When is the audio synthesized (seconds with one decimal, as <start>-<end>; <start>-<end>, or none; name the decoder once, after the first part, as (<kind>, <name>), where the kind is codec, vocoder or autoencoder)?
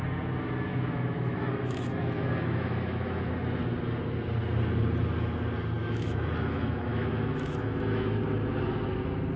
0.7-3.3 (autoencoder, DAC-VAE); 5.8-8.2